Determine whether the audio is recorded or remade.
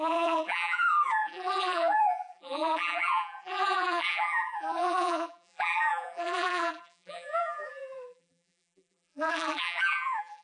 remade